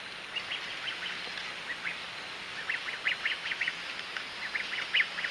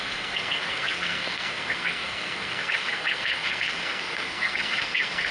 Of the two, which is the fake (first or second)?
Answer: second